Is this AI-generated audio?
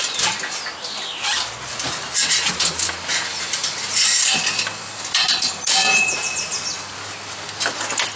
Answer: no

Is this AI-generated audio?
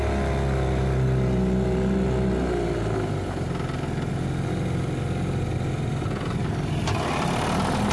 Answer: no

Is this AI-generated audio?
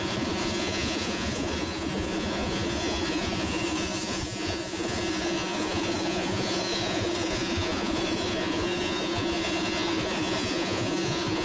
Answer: yes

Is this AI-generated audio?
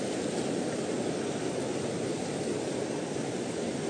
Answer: no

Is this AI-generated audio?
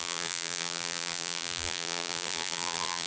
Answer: yes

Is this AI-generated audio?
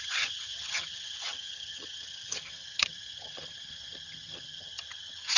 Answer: yes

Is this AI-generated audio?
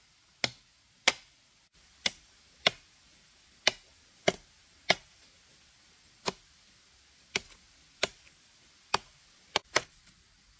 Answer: no